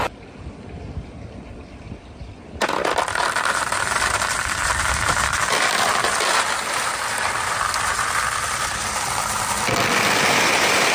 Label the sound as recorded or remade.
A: remade